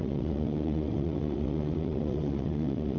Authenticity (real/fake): fake